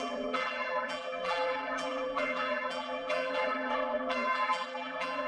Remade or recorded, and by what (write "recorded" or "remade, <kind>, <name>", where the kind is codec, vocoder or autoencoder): remade, vocoder, BigVGAN v2